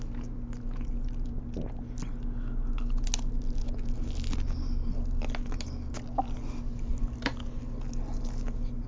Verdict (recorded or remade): recorded